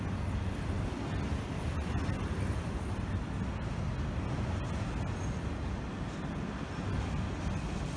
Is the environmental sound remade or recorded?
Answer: recorded